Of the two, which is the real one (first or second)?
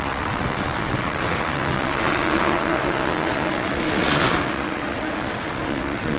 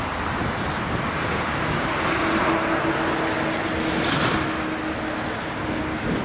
second